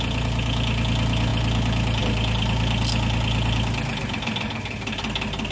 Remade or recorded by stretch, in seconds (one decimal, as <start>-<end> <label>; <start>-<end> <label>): 0.0-5.5 recorded